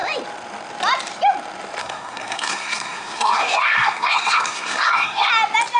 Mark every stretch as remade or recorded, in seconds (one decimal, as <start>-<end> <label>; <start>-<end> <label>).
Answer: 0.0-1.8 recorded; 1.8-5.3 remade; 5.3-5.8 recorded